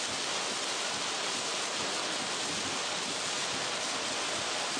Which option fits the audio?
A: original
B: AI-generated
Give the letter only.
A